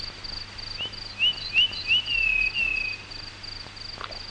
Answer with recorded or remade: recorded